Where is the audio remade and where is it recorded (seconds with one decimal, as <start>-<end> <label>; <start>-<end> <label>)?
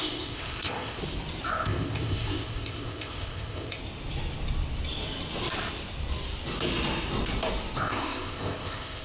0.0-1.0 remade; 1.0-1.5 recorded; 1.5-3.8 remade; 3.8-7.8 recorded; 7.8-9.0 remade